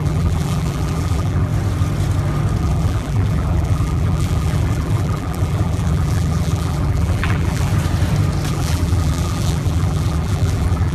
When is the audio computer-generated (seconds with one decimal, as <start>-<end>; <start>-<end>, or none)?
0.0-1.5; 2.6-7.7; 8.5-10.9